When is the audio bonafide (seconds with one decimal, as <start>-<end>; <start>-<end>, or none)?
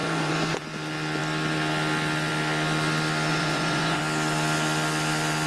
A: 0.6-3.3; 4.0-5.5